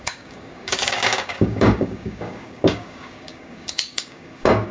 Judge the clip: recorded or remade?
remade